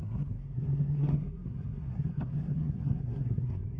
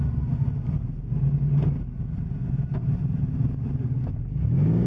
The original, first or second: second